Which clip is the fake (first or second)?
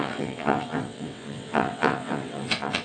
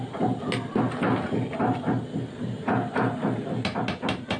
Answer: first